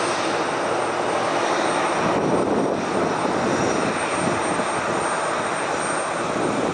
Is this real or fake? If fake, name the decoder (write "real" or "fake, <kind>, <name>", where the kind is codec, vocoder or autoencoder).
real